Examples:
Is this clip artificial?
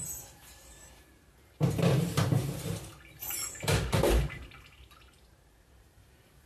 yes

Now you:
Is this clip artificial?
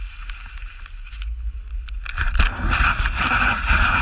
no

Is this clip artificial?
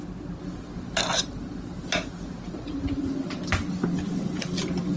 no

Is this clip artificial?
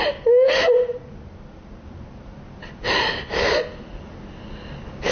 no